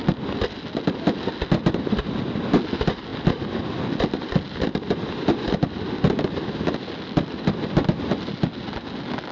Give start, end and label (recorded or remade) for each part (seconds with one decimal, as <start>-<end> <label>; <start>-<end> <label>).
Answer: 0.0-9.3 recorded